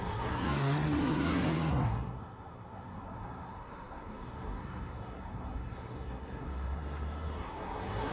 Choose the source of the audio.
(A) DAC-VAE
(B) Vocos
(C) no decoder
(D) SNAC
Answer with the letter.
D